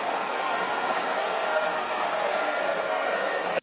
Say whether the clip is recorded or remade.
remade